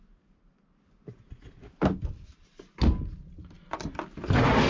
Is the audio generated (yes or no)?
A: no